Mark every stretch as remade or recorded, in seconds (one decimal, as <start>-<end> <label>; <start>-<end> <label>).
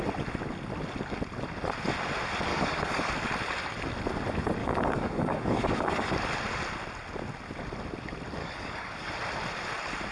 0.0-2.5 recorded; 2.5-3.1 remade; 3.1-4.6 recorded; 4.6-6.1 remade; 6.1-8.4 recorded; 8.4-9.1 remade; 9.1-10.1 recorded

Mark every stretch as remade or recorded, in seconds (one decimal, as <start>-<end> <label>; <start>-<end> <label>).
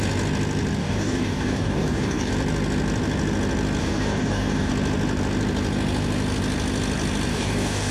0.0-0.8 recorded; 0.8-2.3 remade; 2.3-3.8 recorded; 3.8-4.7 remade; 4.7-7.3 recorded; 7.3-7.9 remade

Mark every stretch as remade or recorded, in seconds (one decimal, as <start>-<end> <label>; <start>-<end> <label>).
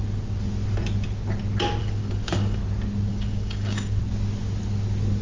0.0-1.8 recorded; 1.8-2.6 remade; 2.6-3.1 recorded; 3.1-4.0 remade; 4.0-5.2 recorded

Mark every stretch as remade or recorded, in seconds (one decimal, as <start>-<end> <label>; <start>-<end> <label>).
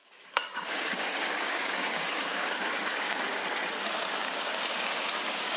0.0-3.4 remade; 3.4-3.9 recorded; 3.9-5.6 remade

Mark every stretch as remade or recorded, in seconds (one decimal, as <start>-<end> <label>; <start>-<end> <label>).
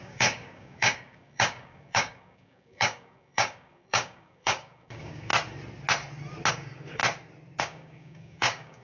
0.0-5.3 remade; 5.3-6.5 recorded; 6.5-7.0 remade; 7.0-7.6 recorded; 7.6-8.8 remade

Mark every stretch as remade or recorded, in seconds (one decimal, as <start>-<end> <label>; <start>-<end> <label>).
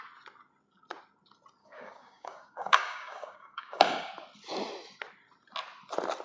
0.0-1.6 recorded; 1.6-4.1 remade; 4.1-6.2 recorded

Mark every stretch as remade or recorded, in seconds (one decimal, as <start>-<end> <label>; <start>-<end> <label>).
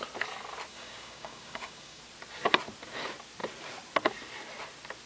0.0-0.7 recorded; 0.7-2.0 remade; 2.0-5.1 recorded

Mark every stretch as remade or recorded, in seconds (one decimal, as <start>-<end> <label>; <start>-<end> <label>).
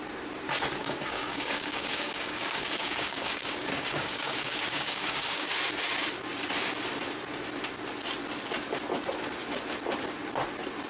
0.0-0.8 recorded; 0.8-5.5 remade; 5.5-10.9 recorded